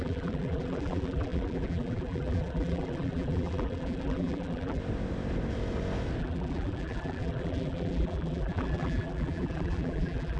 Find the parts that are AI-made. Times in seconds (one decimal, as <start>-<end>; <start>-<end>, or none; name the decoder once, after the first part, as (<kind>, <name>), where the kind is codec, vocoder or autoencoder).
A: 0.0-4.8 (vocoder, BigVGAN v2); 6.2-10.4